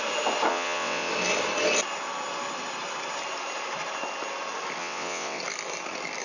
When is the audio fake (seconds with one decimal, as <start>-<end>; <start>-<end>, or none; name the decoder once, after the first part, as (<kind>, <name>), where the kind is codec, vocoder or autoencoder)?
0.5-1.1 (vocoder, WaveNeXt); 4.8-5.4